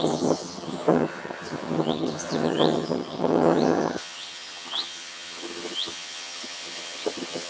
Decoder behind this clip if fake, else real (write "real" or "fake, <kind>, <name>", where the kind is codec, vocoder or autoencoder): fake, vocoder, HiFi-GAN